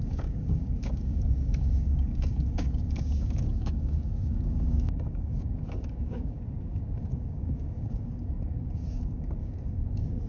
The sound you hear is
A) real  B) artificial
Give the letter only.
B